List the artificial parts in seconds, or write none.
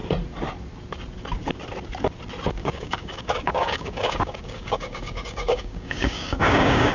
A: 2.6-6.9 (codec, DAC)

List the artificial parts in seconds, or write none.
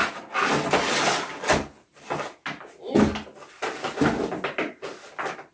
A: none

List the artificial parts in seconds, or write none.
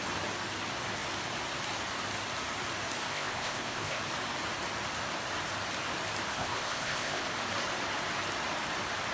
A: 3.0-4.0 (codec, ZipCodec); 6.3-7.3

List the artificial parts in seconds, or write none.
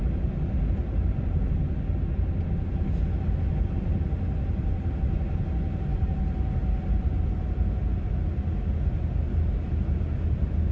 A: 0.8-1.4 (vocoder, BigVGAN v2)